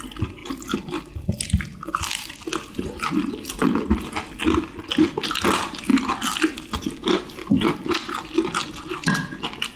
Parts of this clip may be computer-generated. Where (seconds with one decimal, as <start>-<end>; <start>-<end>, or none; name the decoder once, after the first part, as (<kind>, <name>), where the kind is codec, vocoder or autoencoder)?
none